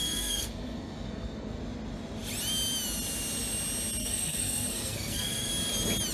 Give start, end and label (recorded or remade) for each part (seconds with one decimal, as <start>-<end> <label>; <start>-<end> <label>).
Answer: 0.0-1.6 remade; 1.6-4.0 recorded; 4.0-5.5 remade; 5.5-6.1 recorded